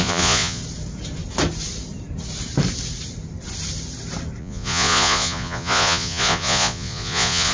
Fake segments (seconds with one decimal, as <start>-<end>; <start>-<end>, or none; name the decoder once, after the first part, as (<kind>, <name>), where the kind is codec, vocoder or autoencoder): 0.0-0.6 (vocoder, Vocos); 4.4-7.5